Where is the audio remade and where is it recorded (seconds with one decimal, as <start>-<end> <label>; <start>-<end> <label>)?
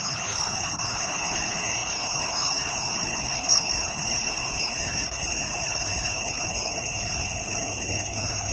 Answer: 0.0-8.5 remade